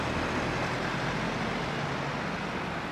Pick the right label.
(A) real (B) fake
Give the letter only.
A